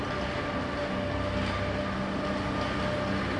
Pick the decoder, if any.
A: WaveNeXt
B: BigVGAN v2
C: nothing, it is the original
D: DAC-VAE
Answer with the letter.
C